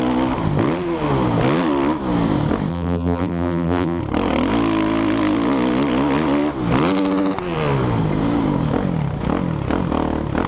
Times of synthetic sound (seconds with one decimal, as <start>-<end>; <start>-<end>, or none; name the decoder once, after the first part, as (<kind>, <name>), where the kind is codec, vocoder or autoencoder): 2.7-4.0 (vocoder, BigVGAN v2)